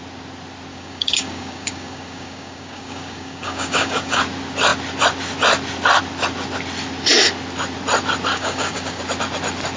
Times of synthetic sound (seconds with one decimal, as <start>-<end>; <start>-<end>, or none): 0.7-4.2; 8.3-9.0